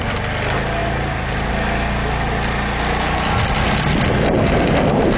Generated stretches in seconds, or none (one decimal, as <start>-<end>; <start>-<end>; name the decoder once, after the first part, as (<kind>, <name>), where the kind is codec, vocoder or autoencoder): 0.8-1.5 (vocoder, BigVGAN v2)